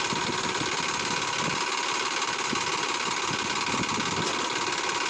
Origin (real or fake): real